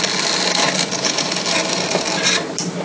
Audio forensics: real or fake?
real